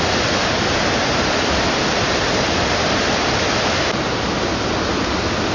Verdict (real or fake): real